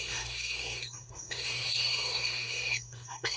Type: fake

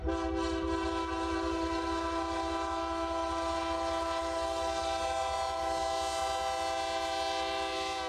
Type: real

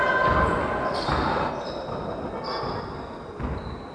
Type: real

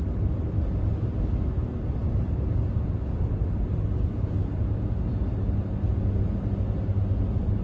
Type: real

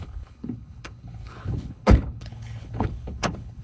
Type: fake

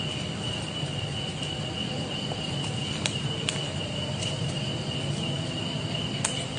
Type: real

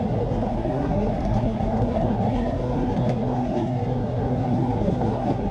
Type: fake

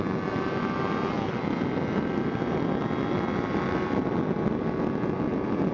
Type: real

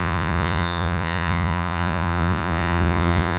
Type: fake